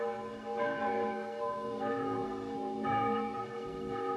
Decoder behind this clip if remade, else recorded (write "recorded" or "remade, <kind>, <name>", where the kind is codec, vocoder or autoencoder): remade, codec, SNAC